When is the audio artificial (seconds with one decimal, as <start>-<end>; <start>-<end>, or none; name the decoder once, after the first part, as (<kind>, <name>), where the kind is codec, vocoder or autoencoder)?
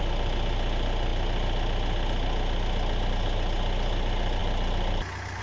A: none